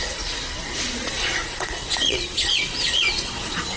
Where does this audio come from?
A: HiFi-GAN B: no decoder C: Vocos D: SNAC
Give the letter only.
C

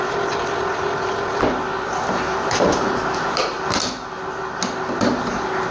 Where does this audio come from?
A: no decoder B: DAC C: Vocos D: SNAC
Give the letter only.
A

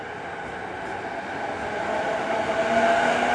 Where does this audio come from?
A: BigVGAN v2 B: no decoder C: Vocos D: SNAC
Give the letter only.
B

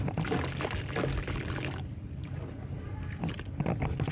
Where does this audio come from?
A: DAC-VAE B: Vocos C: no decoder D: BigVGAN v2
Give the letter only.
C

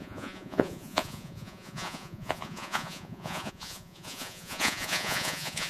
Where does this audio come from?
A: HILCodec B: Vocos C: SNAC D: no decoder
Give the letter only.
B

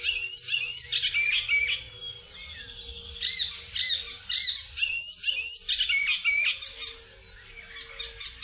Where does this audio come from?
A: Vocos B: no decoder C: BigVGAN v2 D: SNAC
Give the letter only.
B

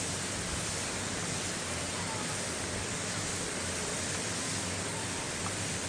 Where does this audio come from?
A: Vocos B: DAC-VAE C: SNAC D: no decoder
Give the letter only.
D